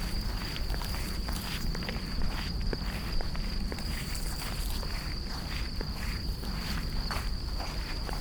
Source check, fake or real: fake